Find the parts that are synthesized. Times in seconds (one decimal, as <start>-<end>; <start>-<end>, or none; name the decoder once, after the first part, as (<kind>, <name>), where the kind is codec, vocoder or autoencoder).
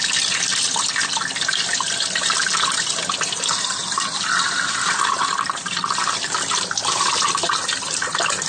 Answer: none